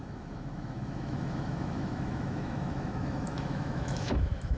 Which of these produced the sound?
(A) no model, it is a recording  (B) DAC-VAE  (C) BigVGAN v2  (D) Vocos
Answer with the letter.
B